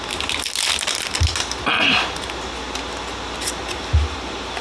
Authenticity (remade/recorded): recorded